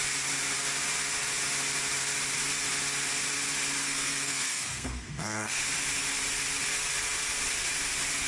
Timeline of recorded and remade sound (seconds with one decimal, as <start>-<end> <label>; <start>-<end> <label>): 0.0-3.8 recorded; 3.8-5.6 remade; 5.6-8.3 recorded

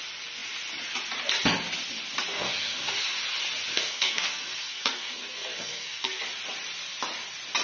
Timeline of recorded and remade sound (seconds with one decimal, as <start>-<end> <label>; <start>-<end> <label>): 0.0-2.3 recorded; 2.3-3.2 remade; 3.2-3.7 recorded; 3.7-6.2 remade; 6.2-7.6 recorded

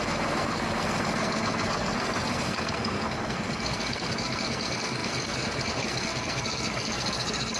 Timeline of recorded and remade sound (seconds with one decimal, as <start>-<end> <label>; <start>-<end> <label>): 0.0-7.6 remade